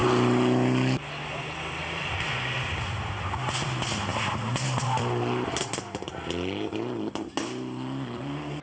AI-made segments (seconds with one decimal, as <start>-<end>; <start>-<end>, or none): none